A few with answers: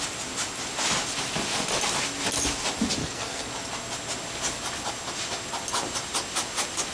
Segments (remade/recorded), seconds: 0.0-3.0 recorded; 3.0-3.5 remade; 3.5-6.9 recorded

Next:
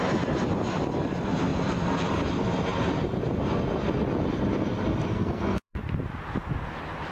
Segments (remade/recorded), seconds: 0.0-5.1 recorded; 5.1-5.8 remade; 5.8-7.1 recorded

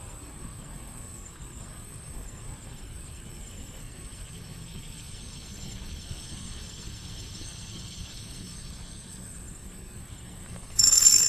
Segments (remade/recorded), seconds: 0.0-11.3 remade

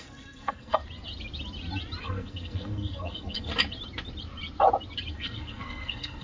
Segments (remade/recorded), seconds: 0.0-0.8 remade; 0.8-2.0 recorded; 2.0-3.5 remade; 3.5-5.1 recorded; 5.1-6.2 remade